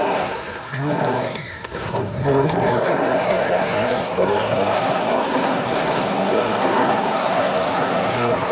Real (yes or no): no